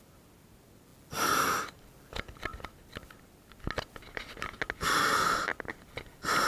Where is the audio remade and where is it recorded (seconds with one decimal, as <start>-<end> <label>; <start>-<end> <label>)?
0.0-6.5 recorded